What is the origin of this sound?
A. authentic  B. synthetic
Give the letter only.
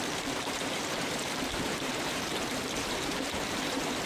B